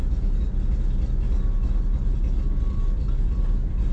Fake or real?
real